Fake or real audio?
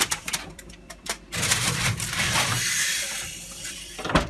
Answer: fake